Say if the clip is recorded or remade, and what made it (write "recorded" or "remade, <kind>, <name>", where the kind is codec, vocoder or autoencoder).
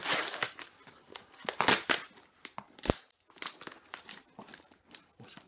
recorded